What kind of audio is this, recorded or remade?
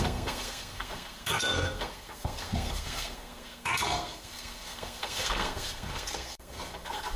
remade